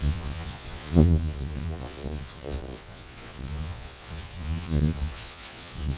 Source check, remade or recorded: remade